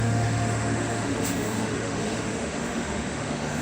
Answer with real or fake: fake